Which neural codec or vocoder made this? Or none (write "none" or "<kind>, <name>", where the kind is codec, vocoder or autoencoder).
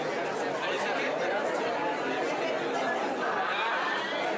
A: none